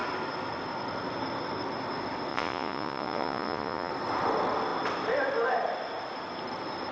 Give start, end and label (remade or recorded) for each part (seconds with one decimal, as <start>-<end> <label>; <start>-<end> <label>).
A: 0.0-2.3 recorded; 2.3-3.9 remade; 3.9-6.9 recorded